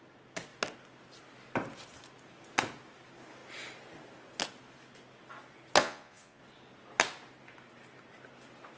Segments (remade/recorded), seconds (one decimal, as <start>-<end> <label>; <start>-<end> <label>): 0.0-5.8 recorded; 5.8-6.4 remade; 6.4-8.8 recorded